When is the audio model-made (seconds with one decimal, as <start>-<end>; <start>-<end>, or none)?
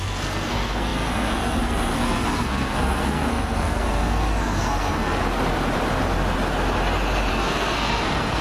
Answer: 0.0-5.2; 7.3-8.4